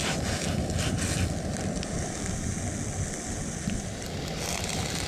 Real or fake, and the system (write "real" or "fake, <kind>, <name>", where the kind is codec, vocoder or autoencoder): real